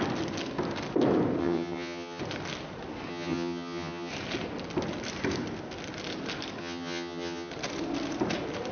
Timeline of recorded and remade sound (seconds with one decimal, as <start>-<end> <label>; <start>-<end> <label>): 0.0-1.4 recorded; 1.4-2.2 remade; 2.2-3.1 recorded; 3.1-4.1 remade; 4.1-6.6 recorded; 6.6-7.5 remade; 7.5-8.7 recorded